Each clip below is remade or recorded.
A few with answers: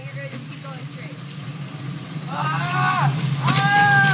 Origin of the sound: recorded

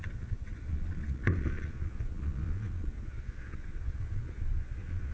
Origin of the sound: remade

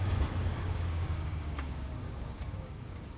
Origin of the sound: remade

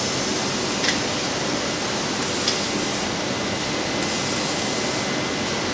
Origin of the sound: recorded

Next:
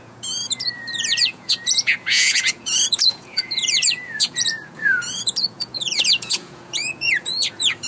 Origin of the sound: remade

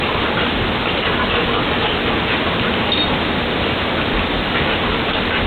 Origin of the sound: recorded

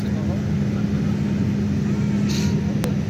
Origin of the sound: recorded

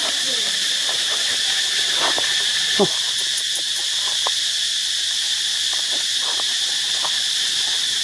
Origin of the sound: remade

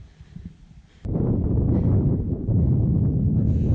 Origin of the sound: recorded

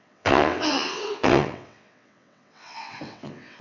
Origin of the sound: remade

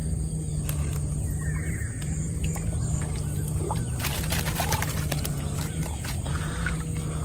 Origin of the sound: recorded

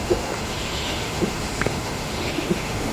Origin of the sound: remade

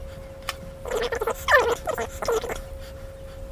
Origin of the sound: recorded